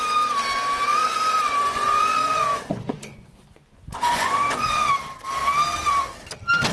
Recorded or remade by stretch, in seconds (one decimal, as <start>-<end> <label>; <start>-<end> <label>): 0.0-0.9 recorded; 0.9-4.9 remade; 4.9-6.7 recorded